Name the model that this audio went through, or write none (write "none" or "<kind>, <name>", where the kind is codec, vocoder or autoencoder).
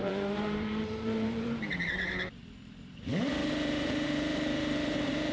vocoder, BigVGAN v2